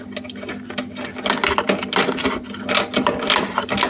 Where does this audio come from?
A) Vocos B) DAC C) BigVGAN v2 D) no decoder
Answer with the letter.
D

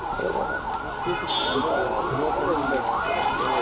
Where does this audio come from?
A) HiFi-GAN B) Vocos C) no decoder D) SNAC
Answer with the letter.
C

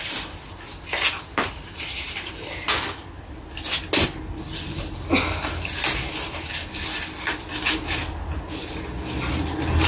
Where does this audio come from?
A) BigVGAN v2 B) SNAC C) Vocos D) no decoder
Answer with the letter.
D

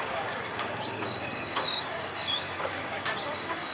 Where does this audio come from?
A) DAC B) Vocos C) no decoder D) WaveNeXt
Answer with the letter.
A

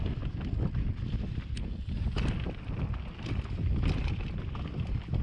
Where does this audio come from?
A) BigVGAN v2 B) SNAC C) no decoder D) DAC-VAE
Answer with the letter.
C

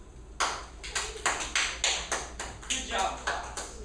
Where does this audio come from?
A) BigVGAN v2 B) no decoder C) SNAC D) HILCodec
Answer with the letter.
B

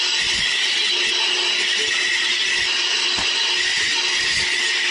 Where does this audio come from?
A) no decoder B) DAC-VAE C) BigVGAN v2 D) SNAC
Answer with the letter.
A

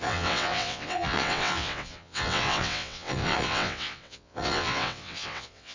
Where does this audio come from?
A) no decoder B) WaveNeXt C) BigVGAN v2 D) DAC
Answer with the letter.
B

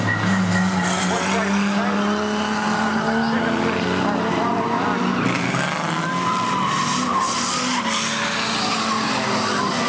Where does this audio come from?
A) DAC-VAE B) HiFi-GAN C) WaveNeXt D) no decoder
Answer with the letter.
D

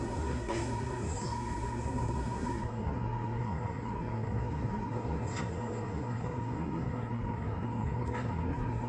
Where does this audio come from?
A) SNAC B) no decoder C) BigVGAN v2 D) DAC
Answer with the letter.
A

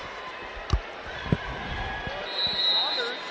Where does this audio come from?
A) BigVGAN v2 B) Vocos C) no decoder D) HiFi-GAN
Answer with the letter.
C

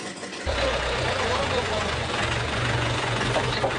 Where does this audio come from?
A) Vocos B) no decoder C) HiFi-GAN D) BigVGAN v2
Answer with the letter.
A